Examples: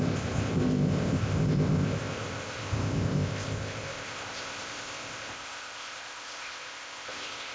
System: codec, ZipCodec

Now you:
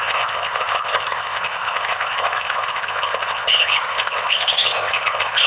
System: codec, ZipCodec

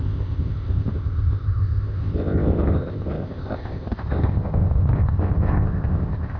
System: codec, ZipCodec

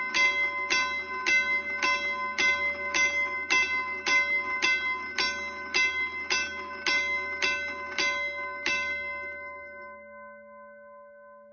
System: none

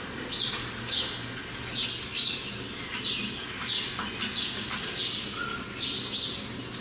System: none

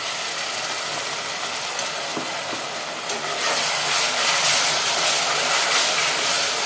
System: none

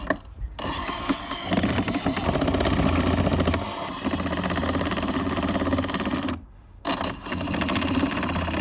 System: none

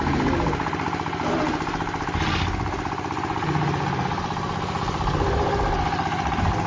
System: none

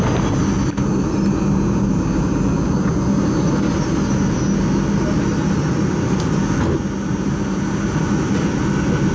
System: none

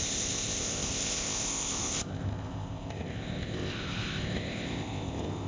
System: codec, ZipCodec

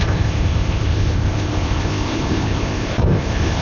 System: codec, ZipCodec